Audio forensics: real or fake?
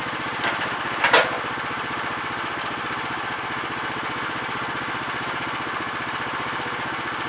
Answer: real